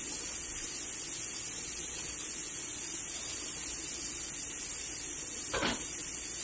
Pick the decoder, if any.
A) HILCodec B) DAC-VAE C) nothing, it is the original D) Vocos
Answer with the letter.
C